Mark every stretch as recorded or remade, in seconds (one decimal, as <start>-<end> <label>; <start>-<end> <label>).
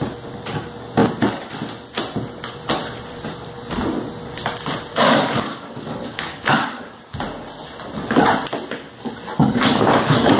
0.0-4.9 recorded; 4.9-7.0 remade; 7.0-9.4 recorded; 9.4-10.4 remade